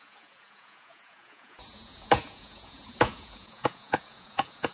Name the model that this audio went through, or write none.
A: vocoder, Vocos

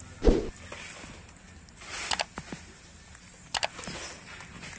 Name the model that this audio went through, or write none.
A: none